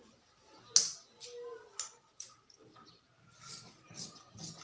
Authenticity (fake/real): real